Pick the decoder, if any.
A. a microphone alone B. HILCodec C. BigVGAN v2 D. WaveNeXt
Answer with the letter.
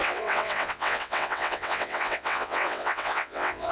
D